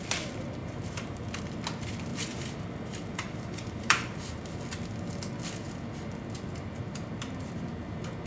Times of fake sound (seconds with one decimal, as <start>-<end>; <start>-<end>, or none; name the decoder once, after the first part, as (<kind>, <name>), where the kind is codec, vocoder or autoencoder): 0.6-1.4 (vocoder, BigVGAN v2); 2.1-4.6